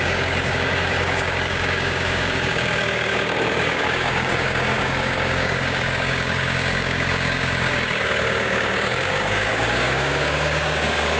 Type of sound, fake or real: fake